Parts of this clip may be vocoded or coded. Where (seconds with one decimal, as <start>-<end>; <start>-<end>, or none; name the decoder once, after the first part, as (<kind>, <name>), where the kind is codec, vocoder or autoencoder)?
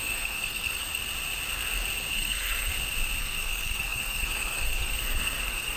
0.0-0.9 (codec, SNAC); 2.1-2.7; 3.2-5.8